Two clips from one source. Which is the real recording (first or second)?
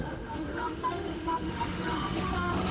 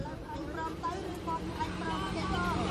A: second